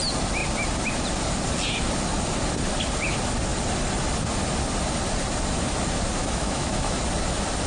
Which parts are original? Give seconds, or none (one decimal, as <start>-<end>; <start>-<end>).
0.0-6.2; 7.0-7.7